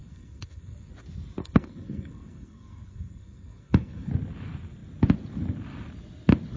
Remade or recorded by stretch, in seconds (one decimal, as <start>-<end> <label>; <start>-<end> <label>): 0.0-0.9 remade; 0.9-1.4 recorded; 1.4-4.1 remade; 4.1-6.6 recorded